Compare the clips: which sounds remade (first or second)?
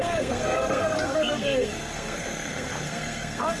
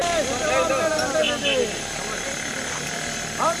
first